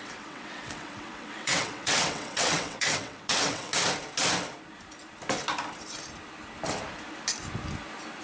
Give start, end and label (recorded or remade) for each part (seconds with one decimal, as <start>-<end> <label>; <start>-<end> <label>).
0.0-3.7 remade; 3.7-8.2 recorded